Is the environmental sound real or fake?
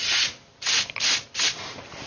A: real